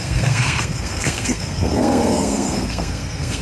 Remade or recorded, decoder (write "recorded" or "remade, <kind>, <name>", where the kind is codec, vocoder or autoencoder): remade, codec, SNAC